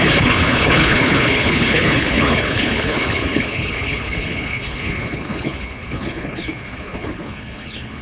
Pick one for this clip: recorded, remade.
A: remade